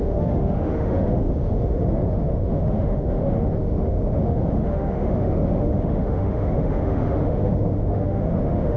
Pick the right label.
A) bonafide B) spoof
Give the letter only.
B